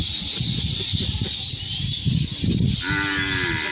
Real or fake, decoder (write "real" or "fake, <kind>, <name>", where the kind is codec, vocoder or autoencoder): real